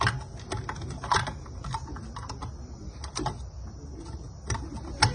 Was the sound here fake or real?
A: real